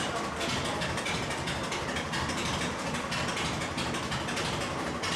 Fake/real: real